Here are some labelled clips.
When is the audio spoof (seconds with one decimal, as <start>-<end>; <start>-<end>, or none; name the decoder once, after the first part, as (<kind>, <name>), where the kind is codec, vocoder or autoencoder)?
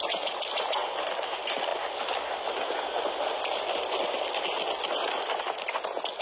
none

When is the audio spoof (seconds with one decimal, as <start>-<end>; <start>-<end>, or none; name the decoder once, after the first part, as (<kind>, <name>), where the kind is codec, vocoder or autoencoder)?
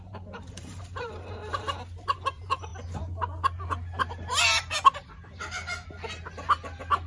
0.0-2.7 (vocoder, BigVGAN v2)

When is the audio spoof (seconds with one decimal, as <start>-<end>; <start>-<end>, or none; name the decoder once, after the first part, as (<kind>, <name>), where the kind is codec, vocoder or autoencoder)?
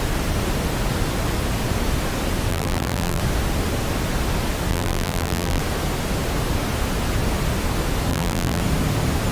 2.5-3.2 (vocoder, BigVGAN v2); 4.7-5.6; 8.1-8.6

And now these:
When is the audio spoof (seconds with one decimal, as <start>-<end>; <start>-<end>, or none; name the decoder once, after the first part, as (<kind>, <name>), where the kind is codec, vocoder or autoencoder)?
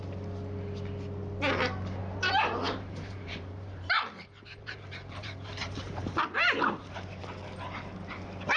2.0-7.2 (vocoder, BigVGAN v2)